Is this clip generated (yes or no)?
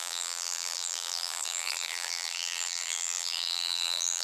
yes